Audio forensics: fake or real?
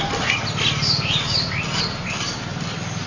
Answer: real